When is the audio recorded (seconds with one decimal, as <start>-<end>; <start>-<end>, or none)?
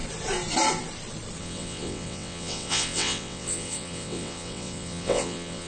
0.0-1.4